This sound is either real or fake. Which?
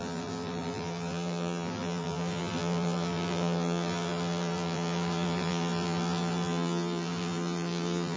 fake